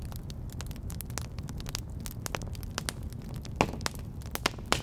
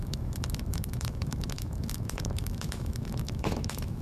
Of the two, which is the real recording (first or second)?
first